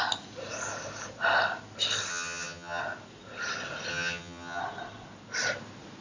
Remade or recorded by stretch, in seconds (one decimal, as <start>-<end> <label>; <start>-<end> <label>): 0.0-2.1 recorded; 2.1-2.8 remade; 2.8-3.9 recorded; 3.9-4.6 remade; 4.6-6.0 recorded